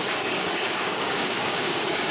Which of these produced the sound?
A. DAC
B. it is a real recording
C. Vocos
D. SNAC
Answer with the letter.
A